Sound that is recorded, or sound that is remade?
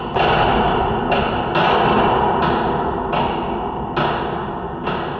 recorded